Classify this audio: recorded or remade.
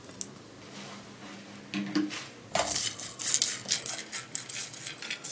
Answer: recorded